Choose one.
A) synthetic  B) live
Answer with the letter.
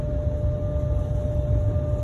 B